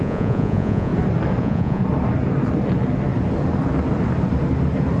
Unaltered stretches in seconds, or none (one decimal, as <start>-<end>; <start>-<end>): 0.9-1.4; 1.8-5.0